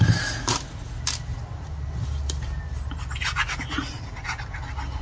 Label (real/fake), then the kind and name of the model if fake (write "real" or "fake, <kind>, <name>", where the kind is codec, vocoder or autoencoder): real